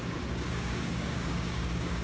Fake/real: fake